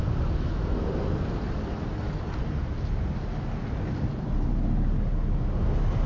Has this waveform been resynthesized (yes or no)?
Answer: no